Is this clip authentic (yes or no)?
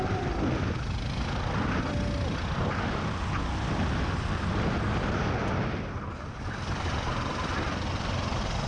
yes